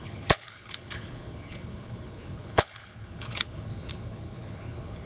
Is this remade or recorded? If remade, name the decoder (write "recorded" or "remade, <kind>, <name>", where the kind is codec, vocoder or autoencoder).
remade, codec, HILCodec